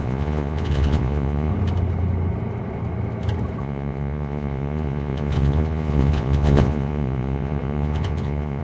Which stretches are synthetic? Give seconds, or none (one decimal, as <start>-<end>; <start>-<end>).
0.0-1.5; 3.6-8.6